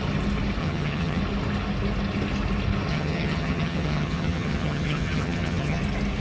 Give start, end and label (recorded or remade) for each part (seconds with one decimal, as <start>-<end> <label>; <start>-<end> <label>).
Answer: 0.0-0.6 recorded; 0.6-1.2 remade; 1.2-2.9 recorded; 2.9-5.8 remade; 5.8-6.2 recorded